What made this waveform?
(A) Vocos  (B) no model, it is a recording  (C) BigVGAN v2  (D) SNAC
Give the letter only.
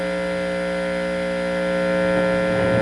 B